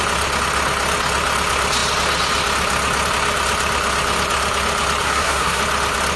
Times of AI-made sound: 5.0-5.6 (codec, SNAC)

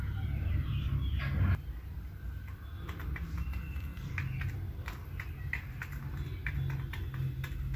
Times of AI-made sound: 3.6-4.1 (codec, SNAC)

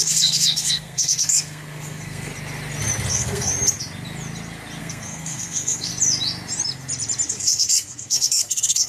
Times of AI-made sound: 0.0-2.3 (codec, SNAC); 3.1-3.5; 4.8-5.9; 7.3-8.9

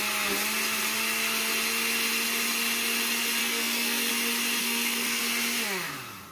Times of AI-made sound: 3.4-4.1 (codec, SNAC); 4.6-5.2

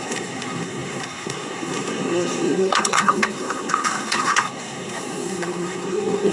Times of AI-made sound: 0.0-6.3 (codec, SNAC)

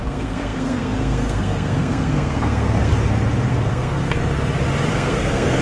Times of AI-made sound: 0.0-2.9 (codec, SNAC); 3.5-4.2; 4.9-5.6